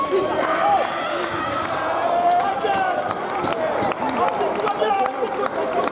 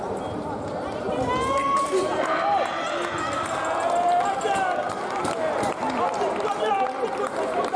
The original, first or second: second